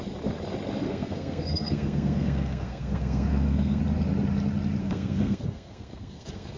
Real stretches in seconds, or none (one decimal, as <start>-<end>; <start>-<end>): 0.0-0.8; 3.8-4.8